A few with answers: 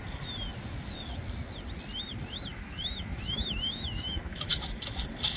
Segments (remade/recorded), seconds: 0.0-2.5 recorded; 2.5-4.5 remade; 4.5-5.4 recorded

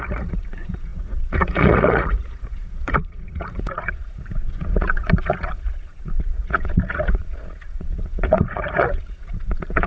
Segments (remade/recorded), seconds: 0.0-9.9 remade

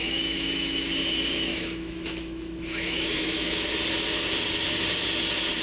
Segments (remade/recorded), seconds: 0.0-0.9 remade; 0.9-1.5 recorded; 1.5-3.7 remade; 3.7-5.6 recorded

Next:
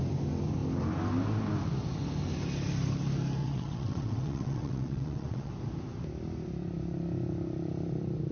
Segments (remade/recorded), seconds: 0.0-3.4 recorded; 3.4-5.5 remade; 5.5-8.3 recorded

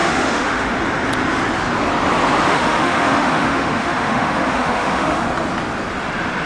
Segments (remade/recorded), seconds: 0.0-0.8 remade; 0.8-2.5 recorded; 2.5-5.2 remade; 5.2-6.5 recorded